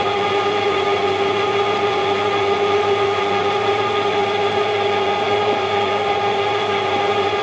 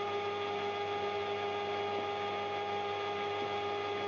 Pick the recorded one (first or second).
second